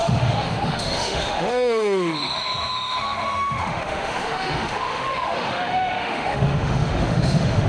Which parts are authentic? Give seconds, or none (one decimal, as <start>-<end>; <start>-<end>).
none